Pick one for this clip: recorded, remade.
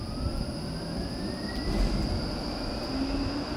recorded